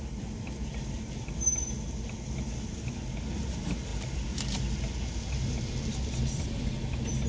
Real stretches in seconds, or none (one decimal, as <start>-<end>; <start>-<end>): 0.0-7.3